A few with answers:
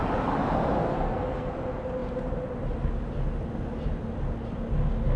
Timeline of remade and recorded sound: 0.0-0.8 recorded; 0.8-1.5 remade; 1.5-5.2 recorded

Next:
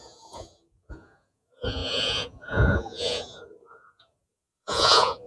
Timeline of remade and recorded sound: 0.0-5.3 remade

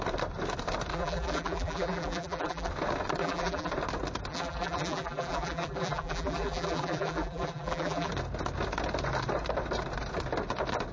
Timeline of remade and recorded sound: 0.0-0.9 recorded; 0.9-2.7 remade; 2.7-3.2 recorded; 3.2-3.7 remade; 3.7-4.3 recorded; 4.3-8.1 remade; 8.1-10.9 recorded

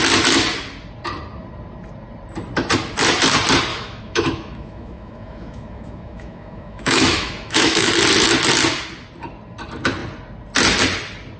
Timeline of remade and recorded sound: 0.0-3.7 recorded; 3.7-7.9 remade; 7.9-11.4 recorded